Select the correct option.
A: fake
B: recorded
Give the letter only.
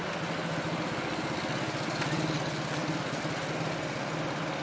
B